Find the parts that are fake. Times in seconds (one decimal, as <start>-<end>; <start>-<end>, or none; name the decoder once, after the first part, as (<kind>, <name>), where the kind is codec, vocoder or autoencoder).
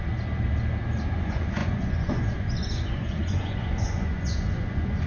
1.1-5.1 (vocoder, Vocos)